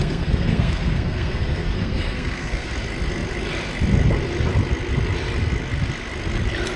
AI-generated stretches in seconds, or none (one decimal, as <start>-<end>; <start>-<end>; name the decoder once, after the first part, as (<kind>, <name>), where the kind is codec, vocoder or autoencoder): 0.0-2.7 (codec, SNAC)

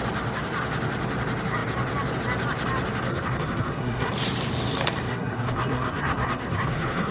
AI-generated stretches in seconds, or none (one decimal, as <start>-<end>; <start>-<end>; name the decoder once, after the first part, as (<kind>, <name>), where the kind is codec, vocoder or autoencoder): 3.1-4.1 (codec, SNAC); 5.1-7.1

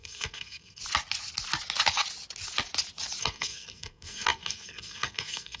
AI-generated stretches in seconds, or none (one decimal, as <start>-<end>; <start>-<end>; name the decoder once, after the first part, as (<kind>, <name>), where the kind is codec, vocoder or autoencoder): 0.0-0.8 (codec, SNAC); 3.2-5.6

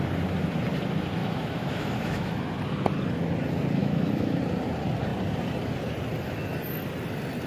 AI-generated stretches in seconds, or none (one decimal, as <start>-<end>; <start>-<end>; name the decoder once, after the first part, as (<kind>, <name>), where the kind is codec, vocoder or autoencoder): 1.2-2.4 (autoencoder, DAC-VAE); 3.8-4.4